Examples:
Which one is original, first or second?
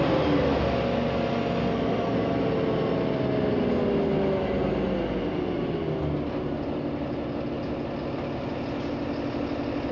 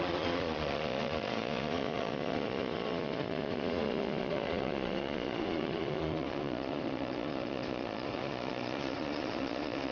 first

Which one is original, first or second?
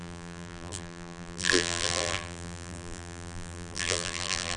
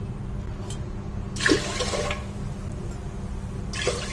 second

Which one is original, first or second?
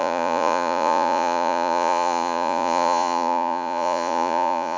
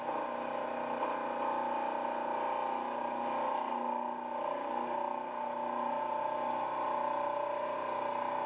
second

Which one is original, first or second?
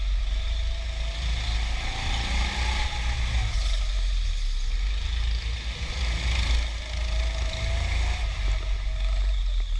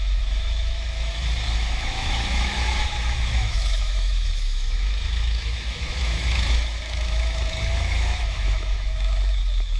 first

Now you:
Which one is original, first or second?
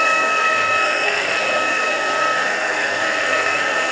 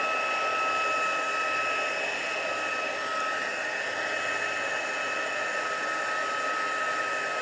second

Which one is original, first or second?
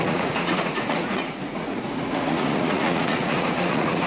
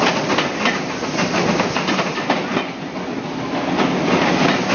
second